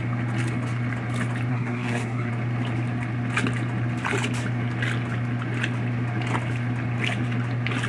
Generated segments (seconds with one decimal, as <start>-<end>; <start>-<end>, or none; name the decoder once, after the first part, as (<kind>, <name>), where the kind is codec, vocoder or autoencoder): 1.5-2.3 (codec, SNAC)